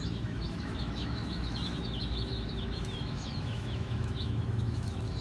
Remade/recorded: remade